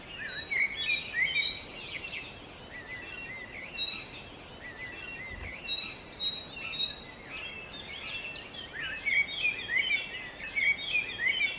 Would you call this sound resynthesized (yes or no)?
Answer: no